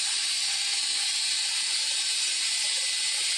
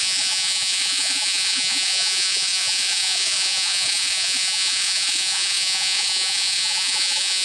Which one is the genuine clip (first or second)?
first